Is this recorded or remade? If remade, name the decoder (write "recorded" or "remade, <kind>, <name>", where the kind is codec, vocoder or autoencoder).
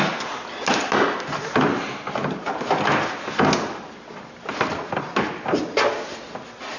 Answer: recorded